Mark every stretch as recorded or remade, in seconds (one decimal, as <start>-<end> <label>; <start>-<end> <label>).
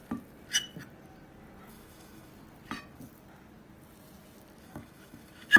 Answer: 0.0-1.7 recorded; 1.7-2.3 remade; 2.3-4.6 recorded; 4.6-5.6 remade